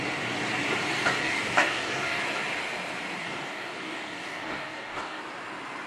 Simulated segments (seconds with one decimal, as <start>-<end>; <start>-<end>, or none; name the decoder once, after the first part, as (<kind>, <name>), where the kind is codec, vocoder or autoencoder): 1.2-2.2 (codec, DAC); 3.2-5.2